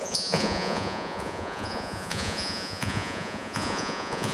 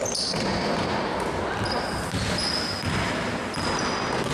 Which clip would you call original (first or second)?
second